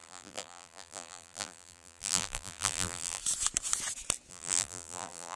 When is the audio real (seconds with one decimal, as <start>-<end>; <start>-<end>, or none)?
3.2-4.3